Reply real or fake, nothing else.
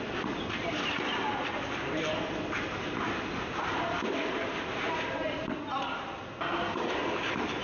real